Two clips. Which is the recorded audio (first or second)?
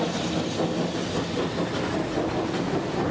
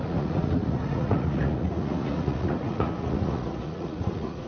first